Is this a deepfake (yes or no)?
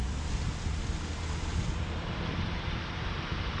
no